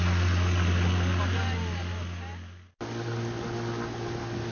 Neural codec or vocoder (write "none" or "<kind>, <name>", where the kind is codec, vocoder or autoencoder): none